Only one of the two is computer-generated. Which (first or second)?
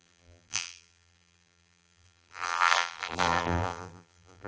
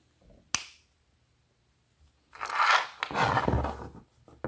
first